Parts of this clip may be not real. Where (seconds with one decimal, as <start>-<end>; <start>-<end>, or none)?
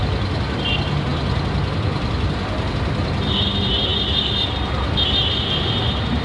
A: 1.1-2.7